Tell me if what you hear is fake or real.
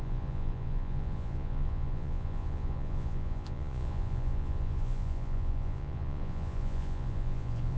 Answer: fake